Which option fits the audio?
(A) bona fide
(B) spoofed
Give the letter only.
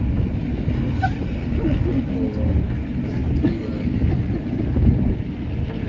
A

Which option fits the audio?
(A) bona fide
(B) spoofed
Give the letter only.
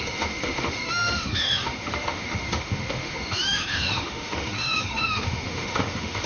B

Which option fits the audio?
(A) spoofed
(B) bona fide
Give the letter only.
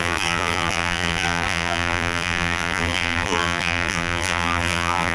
A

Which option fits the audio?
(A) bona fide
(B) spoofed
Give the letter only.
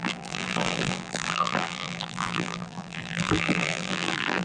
B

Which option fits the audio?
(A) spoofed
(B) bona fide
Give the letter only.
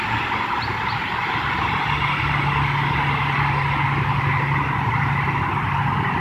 B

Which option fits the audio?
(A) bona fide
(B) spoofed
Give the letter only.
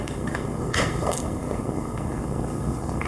B